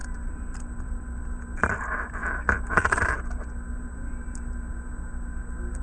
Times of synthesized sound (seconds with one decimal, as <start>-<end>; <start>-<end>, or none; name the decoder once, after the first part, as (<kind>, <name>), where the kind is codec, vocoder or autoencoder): 0.0-1.2 (vocoder, BigVGAN v2)